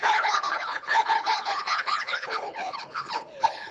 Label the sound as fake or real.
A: fake